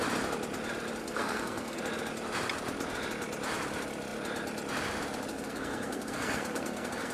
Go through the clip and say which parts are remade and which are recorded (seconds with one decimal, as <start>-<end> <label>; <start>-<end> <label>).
0.0-1.0 recorded; 1.0-1.8 remade; 1.8-5.3 recorded; 5.3-7.1 remade